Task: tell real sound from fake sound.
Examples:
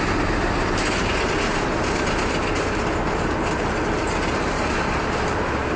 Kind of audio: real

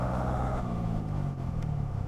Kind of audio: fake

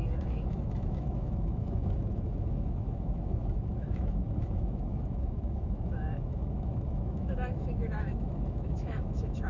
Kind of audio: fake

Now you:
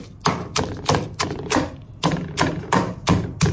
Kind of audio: real